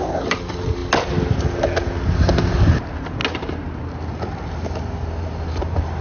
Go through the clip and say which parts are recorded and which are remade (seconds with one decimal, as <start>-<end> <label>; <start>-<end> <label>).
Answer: 0.0-6.0 recorded